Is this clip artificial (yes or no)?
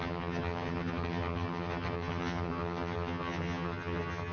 yes